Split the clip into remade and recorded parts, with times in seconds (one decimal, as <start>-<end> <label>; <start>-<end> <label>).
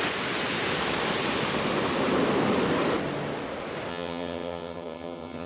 0.0-3.9 recorded; 3.9-5.5 remade